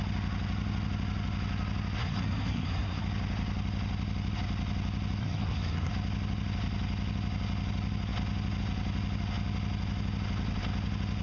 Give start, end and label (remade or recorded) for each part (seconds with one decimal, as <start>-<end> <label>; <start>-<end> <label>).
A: 0.0-2.0 recorded; 2.0-3.0 remade; 3.0-5.2 recorded; 5.2-5.9 remade; 5.9-11.2 recorded